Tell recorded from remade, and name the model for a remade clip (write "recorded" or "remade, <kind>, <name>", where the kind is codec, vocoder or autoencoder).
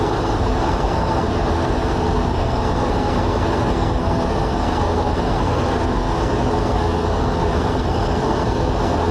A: remade, codec, SNAC